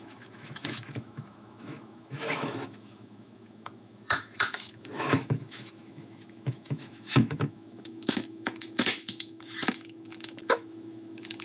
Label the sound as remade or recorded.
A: remade